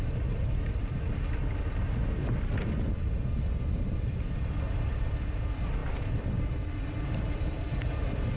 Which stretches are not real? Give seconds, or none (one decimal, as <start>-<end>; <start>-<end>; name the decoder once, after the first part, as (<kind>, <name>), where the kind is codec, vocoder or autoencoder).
0.0-8.4 (vocoder, BigVGAN v2)